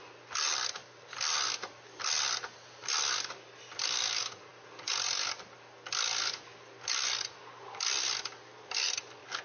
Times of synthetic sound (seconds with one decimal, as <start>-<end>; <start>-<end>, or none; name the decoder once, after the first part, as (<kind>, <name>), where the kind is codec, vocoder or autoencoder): none